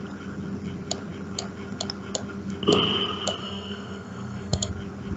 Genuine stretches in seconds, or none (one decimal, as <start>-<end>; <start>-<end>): 0.0-3.4; 4.7-5.2